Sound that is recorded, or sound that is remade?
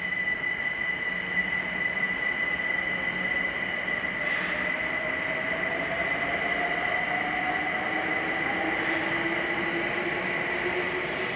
recorded